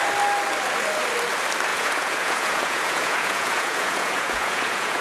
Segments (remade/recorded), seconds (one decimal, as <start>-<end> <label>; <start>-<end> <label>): 0.0-1.7 recorded; 1.7-5.0 remade